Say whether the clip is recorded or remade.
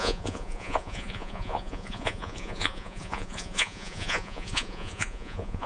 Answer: remade